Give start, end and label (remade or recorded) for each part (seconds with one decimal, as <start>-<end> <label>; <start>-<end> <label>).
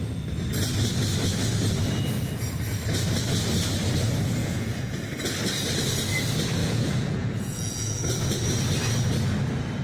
0.0-4.4 recorded; 4.4-5.0 remade; 5.0-6.6 recorded; 6.6-8.0 remade; 8.0-9.8 recorded